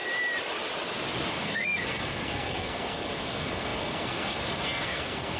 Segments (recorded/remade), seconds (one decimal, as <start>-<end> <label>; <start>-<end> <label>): 0.0-1.3 recorded; 1.3-5.4 remade